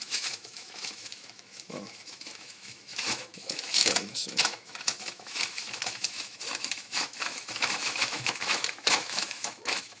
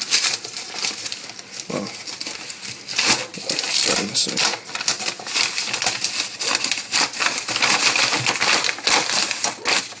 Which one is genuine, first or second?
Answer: second